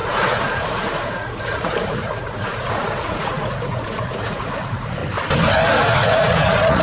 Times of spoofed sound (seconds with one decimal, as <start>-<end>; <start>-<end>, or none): 0.0-5.0; 5.7-6.8